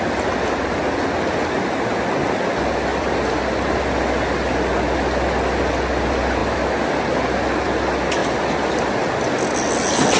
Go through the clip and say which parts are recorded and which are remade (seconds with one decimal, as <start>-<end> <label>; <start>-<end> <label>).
0.0-10.2 recorded